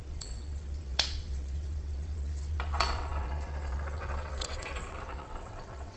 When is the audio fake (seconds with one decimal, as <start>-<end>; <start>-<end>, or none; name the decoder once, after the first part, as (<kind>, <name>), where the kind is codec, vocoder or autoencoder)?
0.0-6.0 (vocoder, WaveNeXt)